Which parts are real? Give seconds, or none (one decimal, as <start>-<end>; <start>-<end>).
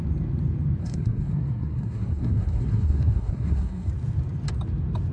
0.0-0.8; 3.9-5.1